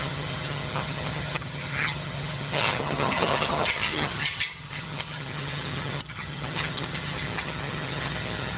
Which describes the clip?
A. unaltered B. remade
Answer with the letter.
B